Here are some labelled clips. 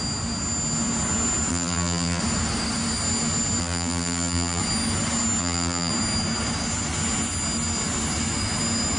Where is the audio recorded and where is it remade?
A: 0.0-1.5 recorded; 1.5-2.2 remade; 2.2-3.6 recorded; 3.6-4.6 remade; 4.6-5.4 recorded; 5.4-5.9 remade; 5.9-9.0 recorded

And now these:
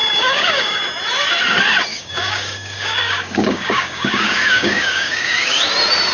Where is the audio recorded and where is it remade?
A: 0.0-0.8 remade; 0.8-1.9 recorded; 1.9-5.6 remade; 5.6-6.1 recorded

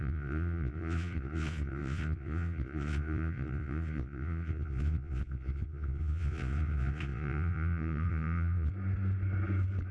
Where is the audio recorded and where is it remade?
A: 0.0-8.7 remade; 8.7-9.9 recorded

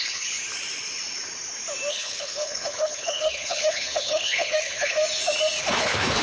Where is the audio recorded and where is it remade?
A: 0.0-0.4 remade; 0.4-1.9 recorded; 1.9-5.0 remade; 5.0-5.6 recorded; 5.6-6.2 remade

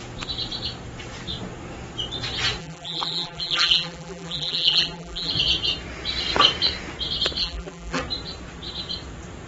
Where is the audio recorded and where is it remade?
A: 0.0-2.6 recorded; 2.6-5.3 remade; 5.3-7.4 recorded; 7.4-8.0 remade; 8.0-9.5 recorded

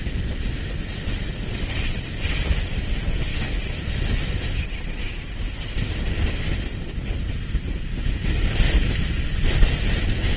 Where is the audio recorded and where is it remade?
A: 0.0-10.4 recorded

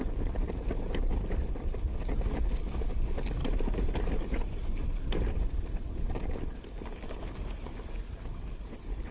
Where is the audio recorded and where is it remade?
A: 0.0-3.4 recorded; 3.4-5.4 remade; 5.4-9.1 recorded

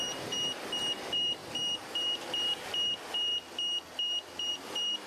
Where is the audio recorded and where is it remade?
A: 0.0-3.3 remade; 3.3-4.5 recorded; 4.5-5.1 remade